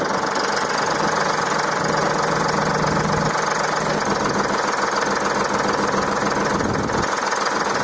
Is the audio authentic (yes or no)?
yes